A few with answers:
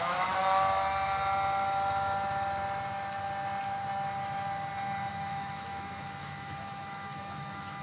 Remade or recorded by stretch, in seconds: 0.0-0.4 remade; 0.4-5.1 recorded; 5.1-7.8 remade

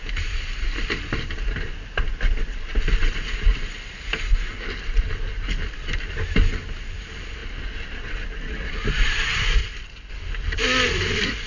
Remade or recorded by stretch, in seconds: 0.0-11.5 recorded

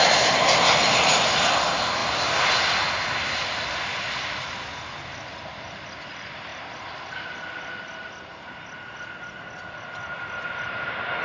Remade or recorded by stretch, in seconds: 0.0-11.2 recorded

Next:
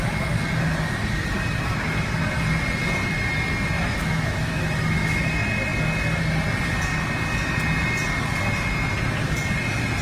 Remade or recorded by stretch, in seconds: 0.0-3.8 recorded; 3.8-5.3 remade; 5.3-10.0 recorded

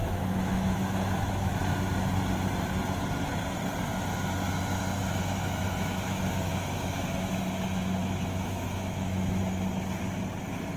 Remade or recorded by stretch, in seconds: 0.0-1.5 remade; 1.5-5.0 recorded; 5.0-7.3 remade; 7.3-8.0 recorded; 8.0-9.4 remade; 9.4-10.8 recorded

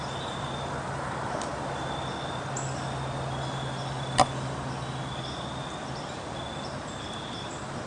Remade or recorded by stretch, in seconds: 0.0-7.9 recorded

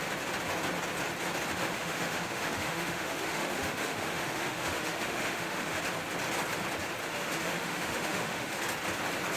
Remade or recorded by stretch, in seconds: 0.0-1.5 recorded; 1.5-5.8 remade; 5.8-7.0 recorded; 7.0-8.6 remade; 8.6-9.4 recorded